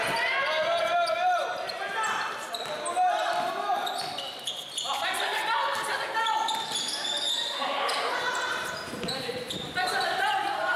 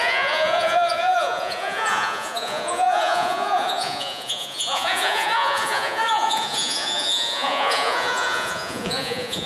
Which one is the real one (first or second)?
first